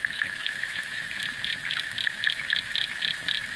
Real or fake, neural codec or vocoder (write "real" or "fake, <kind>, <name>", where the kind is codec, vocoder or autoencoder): fake, autoencoder, DAC-VAE